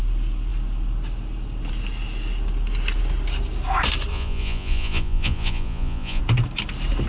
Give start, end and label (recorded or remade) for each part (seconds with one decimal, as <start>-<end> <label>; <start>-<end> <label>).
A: 0.0-4.1 recorded; 4.1-6.2 remade; 6.2-7.1 recorded